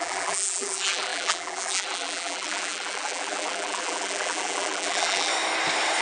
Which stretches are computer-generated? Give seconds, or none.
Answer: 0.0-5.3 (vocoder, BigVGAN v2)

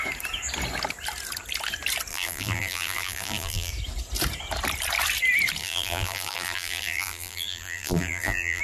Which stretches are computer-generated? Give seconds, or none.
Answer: 2.1-3.7 (vocoder, BigVGAN v2); 5.6-8.6

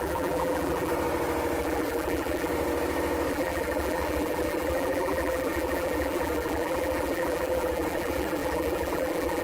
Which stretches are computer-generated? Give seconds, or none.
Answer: 0.0-0.9 (vocoder, BigVGAN v2); 1.6-2.5; 3.3-9.4